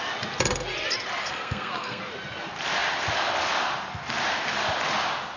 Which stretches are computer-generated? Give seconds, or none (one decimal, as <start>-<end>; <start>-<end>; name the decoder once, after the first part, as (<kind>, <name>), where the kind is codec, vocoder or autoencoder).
1.2-2.0 (codec, SNAC)